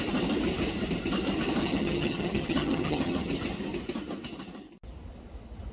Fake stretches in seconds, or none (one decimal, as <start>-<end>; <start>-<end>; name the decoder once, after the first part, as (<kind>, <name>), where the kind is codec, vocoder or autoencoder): 1.6-3.3 (vocoder, HiFi-GAN)